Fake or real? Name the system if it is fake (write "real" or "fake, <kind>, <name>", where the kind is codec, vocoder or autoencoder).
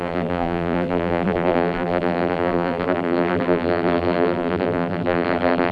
fake, vocoder, BigVGAN v2